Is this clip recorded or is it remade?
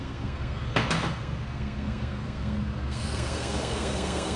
remade